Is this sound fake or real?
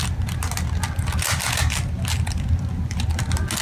real